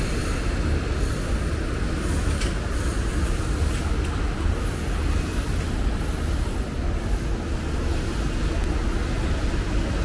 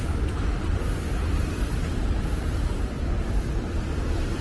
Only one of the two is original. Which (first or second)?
first